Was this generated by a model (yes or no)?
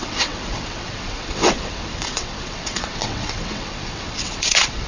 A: yes